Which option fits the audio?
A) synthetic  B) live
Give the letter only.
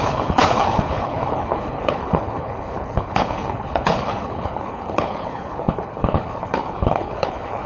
A